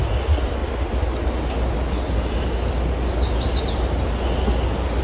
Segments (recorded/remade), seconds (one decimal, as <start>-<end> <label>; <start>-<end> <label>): 0.0-5.0 recorded